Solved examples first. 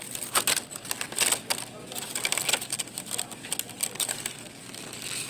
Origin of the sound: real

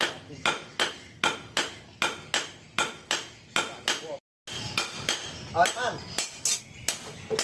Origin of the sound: real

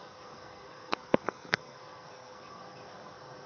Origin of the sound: fake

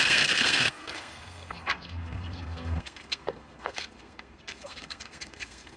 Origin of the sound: fake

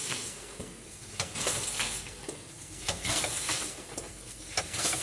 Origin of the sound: fake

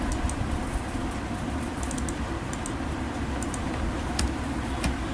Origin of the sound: real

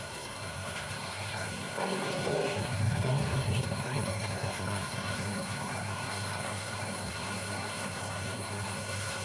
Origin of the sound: fake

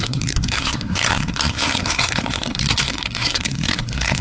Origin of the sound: fake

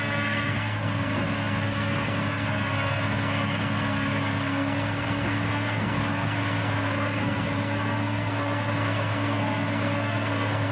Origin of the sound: fake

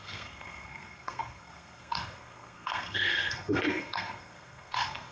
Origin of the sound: fake